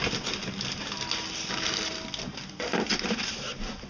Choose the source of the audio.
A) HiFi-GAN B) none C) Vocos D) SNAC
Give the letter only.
B